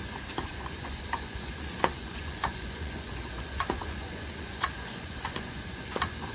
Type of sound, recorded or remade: remade